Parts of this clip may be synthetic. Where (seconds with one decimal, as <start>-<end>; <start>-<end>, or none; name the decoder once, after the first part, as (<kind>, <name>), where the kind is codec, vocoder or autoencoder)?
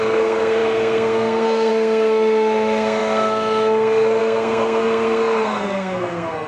0.0-6.5 (codec, SNAC)